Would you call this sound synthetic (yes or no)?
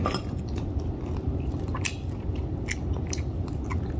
no